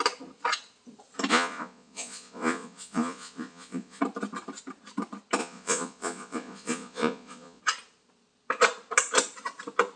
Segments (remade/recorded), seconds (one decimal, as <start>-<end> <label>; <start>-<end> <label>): 0.0-1.3 recorded; 1.3-4.0 remade; 4.0-5.4 recorded; 5.4-7.6 remade; 7.6-10.0 recorded